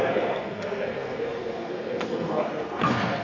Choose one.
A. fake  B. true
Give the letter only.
A